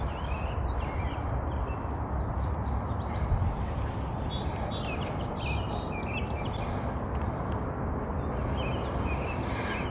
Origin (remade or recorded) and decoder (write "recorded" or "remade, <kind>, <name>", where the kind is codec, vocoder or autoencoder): recorded